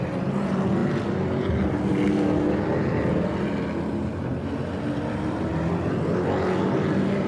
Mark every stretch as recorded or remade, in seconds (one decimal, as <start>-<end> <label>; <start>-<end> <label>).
0.0-4.1 recorded; 4.1-5.5 remade; 5.5-7.3 recorded